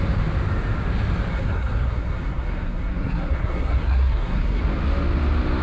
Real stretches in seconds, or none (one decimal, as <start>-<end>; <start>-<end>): 0.0-1.3; 4.6-5.6